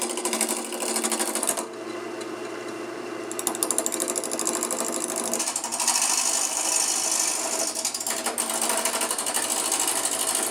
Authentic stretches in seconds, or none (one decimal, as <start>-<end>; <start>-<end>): 0.0-5.7; 6.7-10.5